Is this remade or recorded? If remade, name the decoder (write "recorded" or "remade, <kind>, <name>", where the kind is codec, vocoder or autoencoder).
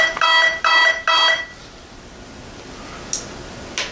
recorded